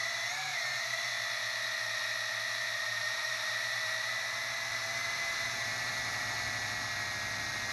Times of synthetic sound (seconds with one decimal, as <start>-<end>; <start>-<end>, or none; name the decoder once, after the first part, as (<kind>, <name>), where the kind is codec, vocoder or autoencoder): 0.0-1.1 (vocoder, BigVGAN v2); 2.7-6.2